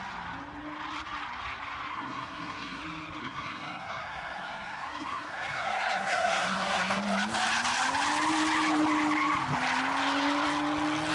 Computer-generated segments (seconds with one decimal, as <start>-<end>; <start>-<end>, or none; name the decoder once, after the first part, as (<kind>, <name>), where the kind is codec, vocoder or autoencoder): 1.9-2.8 (codec, SNAC); 3.2-7.0